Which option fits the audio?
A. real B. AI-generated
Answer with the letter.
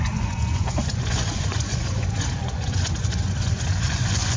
B